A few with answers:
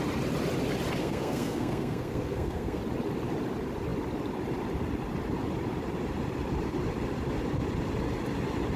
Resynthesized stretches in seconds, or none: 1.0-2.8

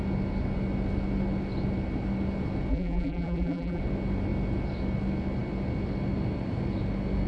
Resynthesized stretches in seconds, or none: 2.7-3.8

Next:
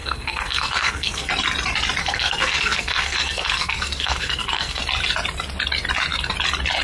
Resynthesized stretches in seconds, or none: 0.0-1.3; 2.0-4.8